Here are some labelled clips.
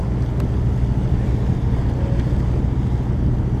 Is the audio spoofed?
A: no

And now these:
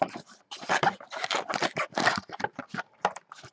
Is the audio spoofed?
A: no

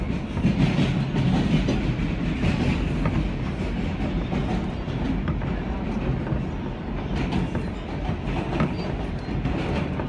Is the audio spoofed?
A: no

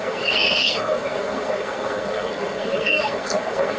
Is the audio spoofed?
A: yes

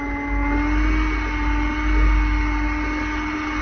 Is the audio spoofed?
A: no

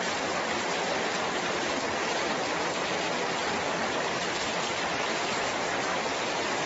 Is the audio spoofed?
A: no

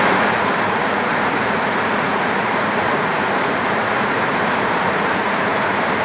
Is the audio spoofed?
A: yes